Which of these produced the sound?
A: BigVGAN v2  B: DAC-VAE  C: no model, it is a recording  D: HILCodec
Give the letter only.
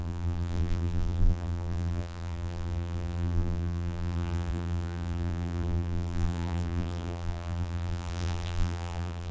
A